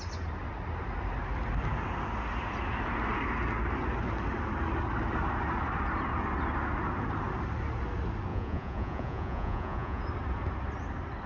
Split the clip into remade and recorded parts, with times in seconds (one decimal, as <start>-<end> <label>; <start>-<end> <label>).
0.0-8.3 recorded; 8.3-10.0 remade; 10.0-11.3 recorded